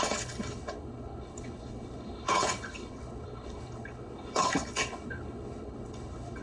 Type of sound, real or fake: fake